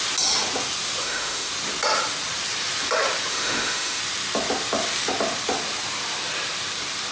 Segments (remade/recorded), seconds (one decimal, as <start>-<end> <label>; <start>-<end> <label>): 0.0-1.0 recorded; 1.0-1.5 remade; 1.5-3.3 recorded; 3.3-4.0 remade; 4.0-7.1 recorded